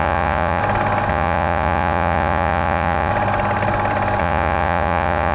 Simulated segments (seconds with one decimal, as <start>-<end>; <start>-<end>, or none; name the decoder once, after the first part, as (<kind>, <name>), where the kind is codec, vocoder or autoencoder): 0.0-0.6 (vocoder, Vocos); 1.1-3.1; 4.2-5.3